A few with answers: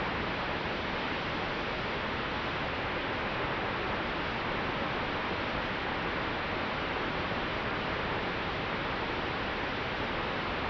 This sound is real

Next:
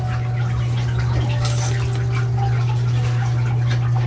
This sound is real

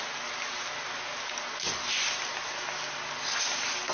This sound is real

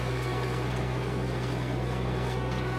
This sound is fake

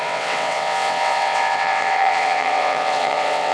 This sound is fake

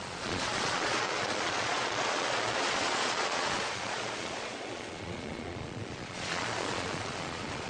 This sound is fake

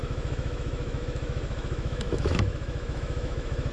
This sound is fake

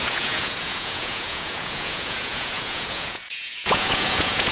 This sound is fake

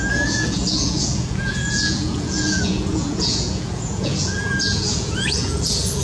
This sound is fake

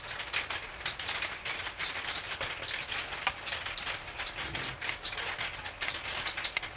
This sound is real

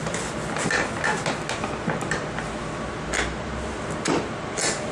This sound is real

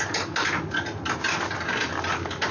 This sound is real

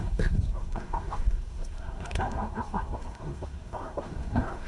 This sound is fake